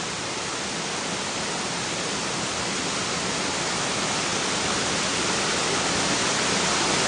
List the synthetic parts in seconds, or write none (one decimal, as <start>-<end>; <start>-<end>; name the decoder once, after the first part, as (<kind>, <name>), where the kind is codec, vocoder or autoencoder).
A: none